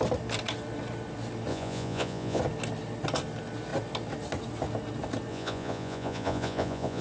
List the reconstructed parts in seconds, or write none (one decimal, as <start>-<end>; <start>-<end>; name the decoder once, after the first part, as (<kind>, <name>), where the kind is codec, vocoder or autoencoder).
1.5-2.4 (vocoder, Vocos); 5.3-7.0